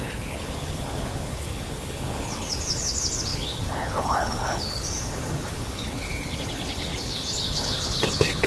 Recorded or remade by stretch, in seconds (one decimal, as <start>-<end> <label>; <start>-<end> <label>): 0.0-8.5 remade